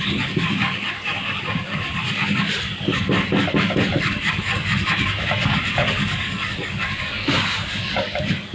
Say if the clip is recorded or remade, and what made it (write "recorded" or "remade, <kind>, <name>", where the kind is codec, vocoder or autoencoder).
remade, codec, DAC